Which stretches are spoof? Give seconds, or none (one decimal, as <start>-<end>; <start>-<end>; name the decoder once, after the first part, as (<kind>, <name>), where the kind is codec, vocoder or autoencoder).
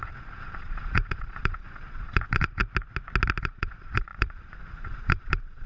0.0-2.6 (vocoder, Vocos); 3.4-5.7